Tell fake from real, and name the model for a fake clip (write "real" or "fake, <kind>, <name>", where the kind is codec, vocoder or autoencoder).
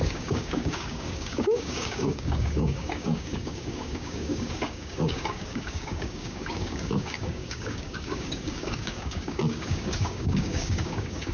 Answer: fake, codec, DAC